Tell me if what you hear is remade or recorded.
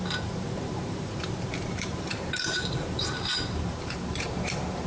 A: remade